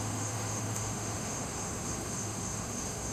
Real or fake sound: fake